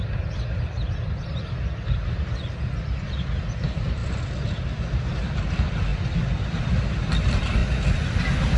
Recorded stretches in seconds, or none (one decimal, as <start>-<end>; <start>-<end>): 0.0-8.6

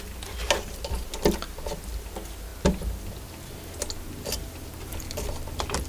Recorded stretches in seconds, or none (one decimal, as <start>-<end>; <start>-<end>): 0.0-5.9

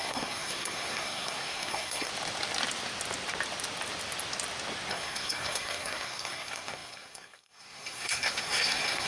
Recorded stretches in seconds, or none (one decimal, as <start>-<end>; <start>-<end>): 2.1-4.9

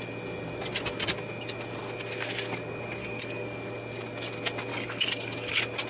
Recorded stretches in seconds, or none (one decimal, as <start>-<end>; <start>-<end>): 0.0-3.0; 3.7-4.7; 5.5-5.9